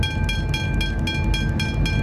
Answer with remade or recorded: recorded